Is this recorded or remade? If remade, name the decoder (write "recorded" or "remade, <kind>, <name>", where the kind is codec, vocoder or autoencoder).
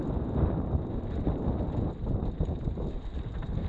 recorded